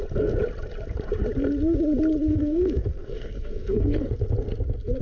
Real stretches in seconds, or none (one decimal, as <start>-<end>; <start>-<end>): 0.0-2.3; 4.1-5.0